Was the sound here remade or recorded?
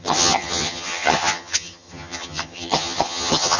remade